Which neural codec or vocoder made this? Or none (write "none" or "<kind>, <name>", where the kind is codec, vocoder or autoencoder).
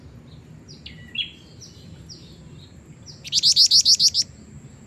none